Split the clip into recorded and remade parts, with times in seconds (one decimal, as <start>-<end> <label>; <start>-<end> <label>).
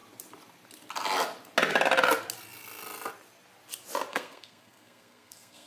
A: 0.0-4.1 recorded; 4.1-5.7 remade